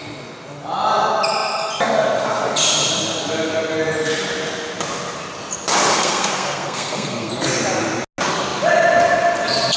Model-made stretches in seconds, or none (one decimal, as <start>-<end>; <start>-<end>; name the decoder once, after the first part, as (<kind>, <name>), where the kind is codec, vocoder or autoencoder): 5.9-7.3 (codec, SNAC)